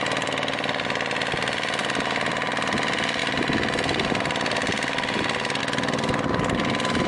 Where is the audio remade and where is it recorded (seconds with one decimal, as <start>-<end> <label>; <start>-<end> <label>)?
0.0-7.1 recorded